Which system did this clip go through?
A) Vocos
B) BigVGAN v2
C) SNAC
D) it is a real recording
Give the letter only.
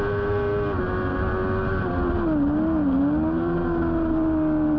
D